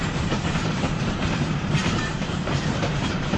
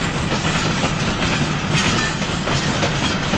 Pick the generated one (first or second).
first